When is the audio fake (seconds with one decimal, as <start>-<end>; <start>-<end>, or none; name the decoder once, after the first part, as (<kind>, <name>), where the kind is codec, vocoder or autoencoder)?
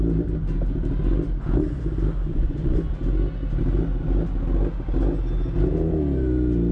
2.3-2.9 (vocoder, Vocos)